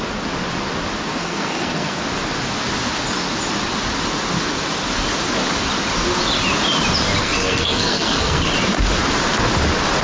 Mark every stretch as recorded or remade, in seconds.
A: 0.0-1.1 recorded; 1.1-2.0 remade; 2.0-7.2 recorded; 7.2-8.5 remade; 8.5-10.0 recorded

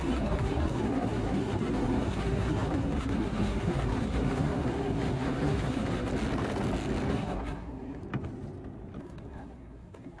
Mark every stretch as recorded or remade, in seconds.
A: 0.0-6.1 remade; 6.1-7.1 recorded; 7.1-8.0 remade; 8.0-9.0 recorded; 9.0-10.2 remade

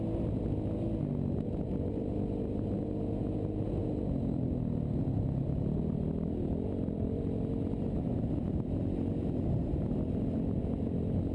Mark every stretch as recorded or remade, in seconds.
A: 0.0-11.3 recorded

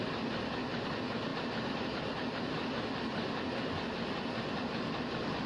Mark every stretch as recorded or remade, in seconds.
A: 0.0-5.5 recorded